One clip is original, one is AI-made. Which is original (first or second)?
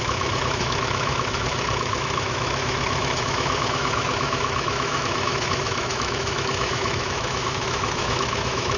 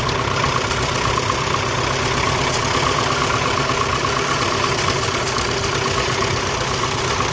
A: second